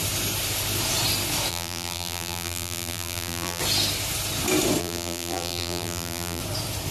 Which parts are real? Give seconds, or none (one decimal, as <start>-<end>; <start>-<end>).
0.0-1.5; 3.6-4.8; 6.4-6.9